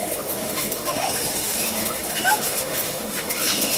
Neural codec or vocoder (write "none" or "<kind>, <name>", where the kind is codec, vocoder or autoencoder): autoencoder, DAC-VAE